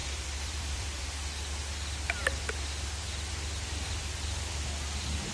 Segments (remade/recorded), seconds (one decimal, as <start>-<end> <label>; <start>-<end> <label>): 0.0-1.0 remade; 1.0-5.3 recorded